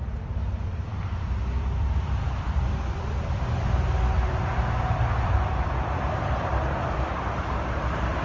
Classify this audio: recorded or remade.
remade